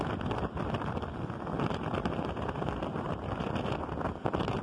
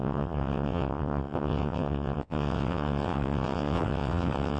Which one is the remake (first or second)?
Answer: second